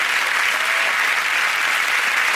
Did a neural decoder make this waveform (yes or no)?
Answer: no